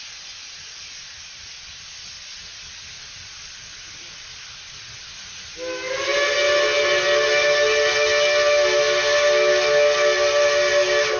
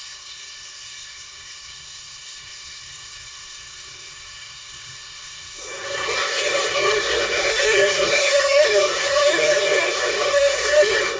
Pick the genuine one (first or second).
first